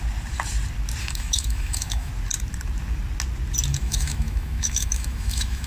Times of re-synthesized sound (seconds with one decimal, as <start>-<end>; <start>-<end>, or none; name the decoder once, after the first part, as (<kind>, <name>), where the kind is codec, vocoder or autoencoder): 1.0-2.1 (autoencoder, DAC-VAE); 3.7-5.7